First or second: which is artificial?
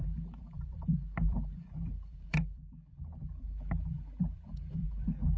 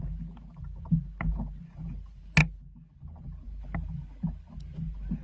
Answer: first